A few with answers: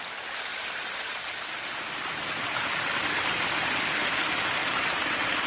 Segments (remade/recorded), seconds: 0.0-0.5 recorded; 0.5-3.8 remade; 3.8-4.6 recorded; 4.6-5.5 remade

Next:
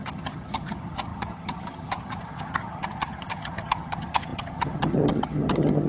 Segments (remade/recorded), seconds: 0.0-5.9 remade

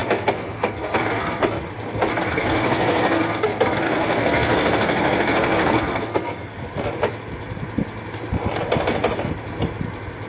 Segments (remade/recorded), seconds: 0.0-1.5 remade; 1.5-2.1 recorded; 2.1-6.7 remade; 6.7-10.3 recorded

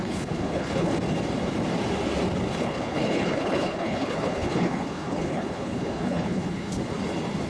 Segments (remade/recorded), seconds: 0.0-0.9 remade; 0.9-2.5 recorded; 2.5-6.7 remade; 6.7-7.5 recorded

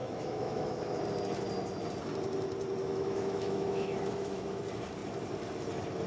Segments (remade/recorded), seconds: 0.0-1.0 remade; 1.0-2.8 recorded; 2.8-4.6 remade; 4.6-6.1 recorded

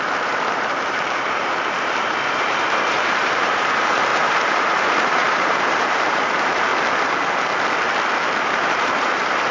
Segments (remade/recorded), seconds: 0.0-6.7 remade; 6.7-8.4 recorded; 8.4-9.5 remade

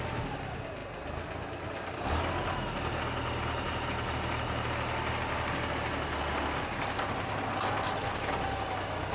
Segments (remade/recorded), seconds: 0.0-9.1 recorded

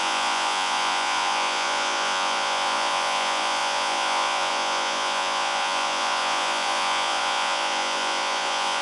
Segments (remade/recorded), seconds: 0.0-8.8 remade